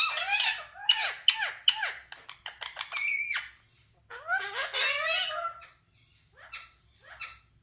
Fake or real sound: real